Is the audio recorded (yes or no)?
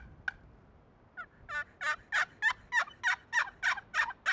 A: yes